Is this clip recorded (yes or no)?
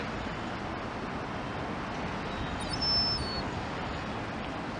yes